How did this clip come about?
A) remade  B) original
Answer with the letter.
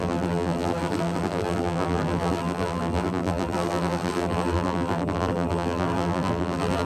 A